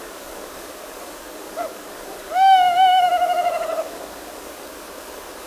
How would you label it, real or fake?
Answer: fake